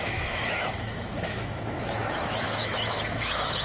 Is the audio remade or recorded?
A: remade